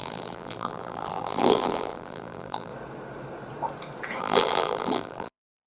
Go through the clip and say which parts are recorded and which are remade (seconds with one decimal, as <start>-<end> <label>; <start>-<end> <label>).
0.0-2.7 remade; 2.7-4.2 recorded; 4.2-5.7 remade